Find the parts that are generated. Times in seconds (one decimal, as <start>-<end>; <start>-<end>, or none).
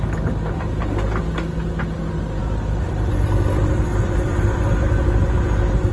2.4-5.9